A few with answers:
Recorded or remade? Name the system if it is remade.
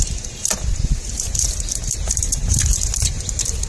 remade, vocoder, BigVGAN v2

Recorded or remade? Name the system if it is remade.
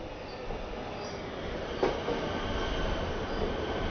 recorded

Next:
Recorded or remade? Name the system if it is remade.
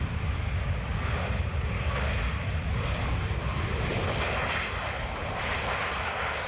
recorded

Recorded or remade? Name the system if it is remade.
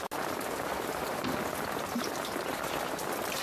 recorded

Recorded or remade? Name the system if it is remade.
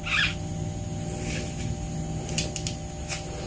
recorded